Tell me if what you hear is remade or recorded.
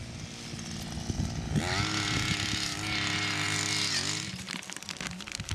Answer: recorded